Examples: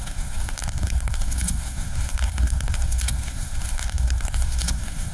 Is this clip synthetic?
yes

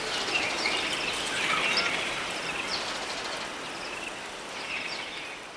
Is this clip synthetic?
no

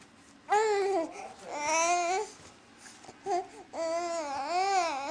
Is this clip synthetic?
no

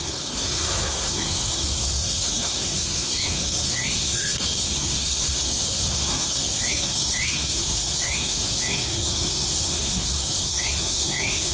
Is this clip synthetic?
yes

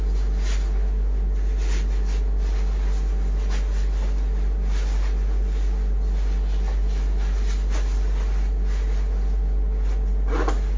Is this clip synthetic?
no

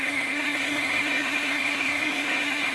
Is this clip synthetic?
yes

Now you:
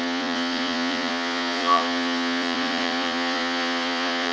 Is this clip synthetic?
yes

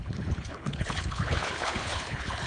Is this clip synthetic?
yes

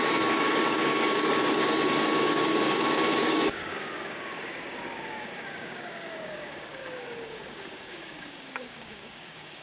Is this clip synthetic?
yes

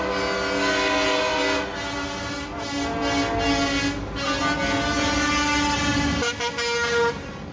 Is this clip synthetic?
no